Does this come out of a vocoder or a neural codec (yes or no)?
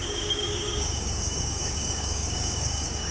yes